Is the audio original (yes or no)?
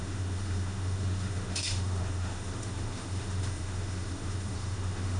no